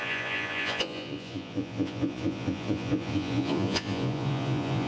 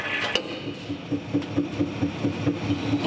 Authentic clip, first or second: second